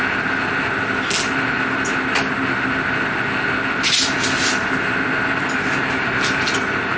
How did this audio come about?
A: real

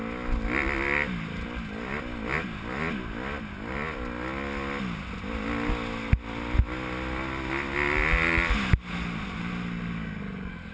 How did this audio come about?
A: real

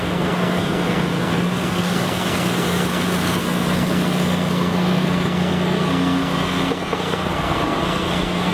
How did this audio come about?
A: fake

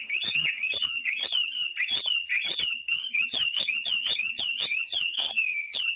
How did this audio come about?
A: fake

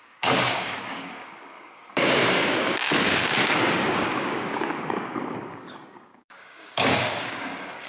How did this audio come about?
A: fake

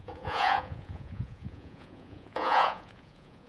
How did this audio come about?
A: fake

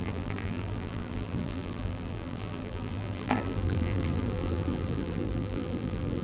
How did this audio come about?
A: fake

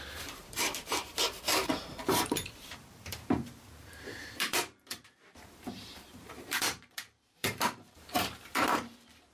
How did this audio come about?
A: fake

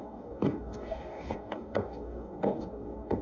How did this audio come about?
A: fake